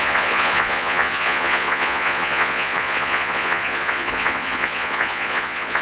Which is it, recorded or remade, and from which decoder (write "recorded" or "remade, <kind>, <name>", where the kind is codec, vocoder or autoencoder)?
remade, vocoder, Vocos